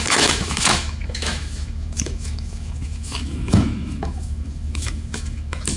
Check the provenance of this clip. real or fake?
fake